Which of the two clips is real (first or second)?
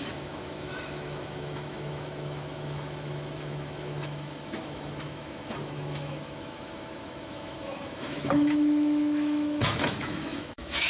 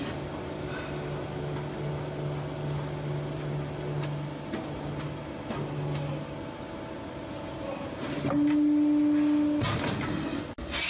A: second